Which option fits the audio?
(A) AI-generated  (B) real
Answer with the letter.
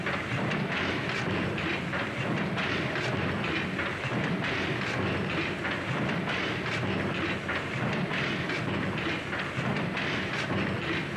B